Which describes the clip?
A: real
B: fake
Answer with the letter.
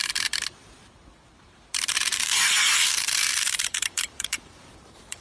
B